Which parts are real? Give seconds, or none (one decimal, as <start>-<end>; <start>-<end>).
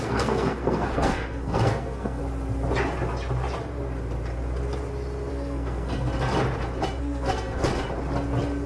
2.2-5.3; 6.1-7.0; 7.6-8.7